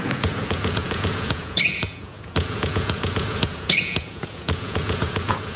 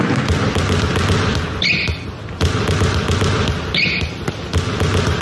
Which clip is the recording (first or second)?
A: second